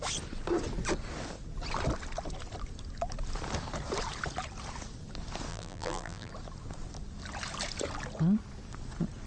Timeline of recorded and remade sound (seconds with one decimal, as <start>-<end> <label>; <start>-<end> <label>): 0.0-5.5 recorded; 5.5-6.3 remade; 6.3-9.3 recorded

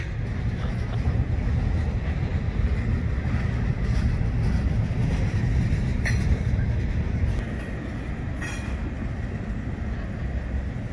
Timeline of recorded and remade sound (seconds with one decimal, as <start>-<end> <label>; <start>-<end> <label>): 0.0-10.9 recorded